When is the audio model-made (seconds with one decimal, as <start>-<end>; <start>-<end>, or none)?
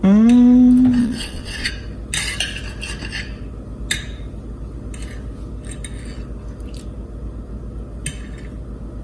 1.0-1.7